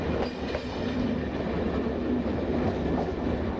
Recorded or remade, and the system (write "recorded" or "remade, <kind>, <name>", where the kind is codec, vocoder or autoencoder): recorded